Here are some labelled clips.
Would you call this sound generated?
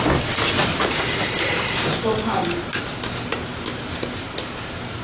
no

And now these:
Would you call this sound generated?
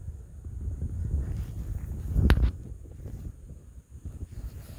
no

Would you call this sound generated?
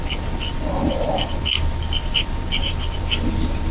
no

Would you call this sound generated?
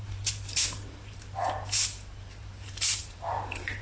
yes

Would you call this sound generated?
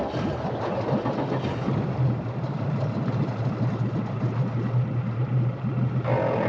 no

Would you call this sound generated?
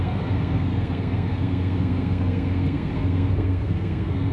yes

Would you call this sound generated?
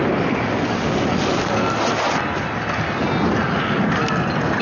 no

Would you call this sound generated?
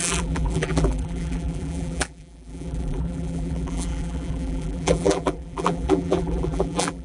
yes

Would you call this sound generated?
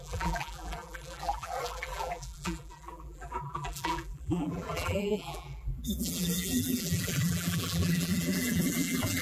yes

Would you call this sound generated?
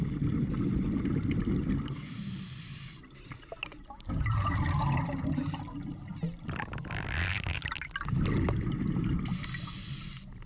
no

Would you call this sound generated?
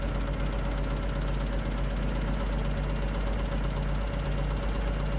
no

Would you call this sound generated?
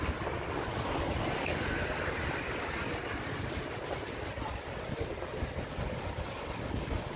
no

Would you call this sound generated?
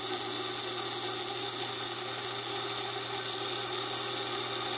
no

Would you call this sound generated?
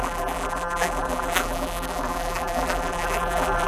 yes